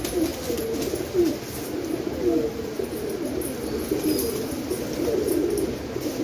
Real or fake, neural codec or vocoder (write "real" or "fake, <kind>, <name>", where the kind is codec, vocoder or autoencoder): real